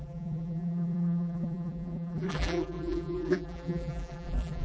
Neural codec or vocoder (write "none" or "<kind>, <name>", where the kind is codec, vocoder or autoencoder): vocoder, BigVGAN v2